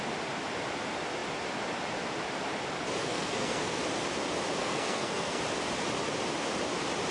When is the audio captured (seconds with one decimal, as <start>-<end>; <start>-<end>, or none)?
0.0-3.0; 3.8-4.6; 5.4-7.1